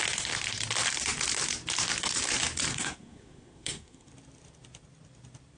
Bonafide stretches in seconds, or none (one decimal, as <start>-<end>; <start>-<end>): 0.0-2.7; 4.1-5.6